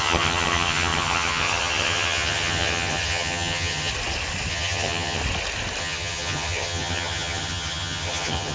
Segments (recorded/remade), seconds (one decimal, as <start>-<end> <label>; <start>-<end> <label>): 0.0-3.9 remade; 3.9-4.5 recorded; 4.5-5.2 remade; 5.2-5.8 recorded; 5.8-8.5 remade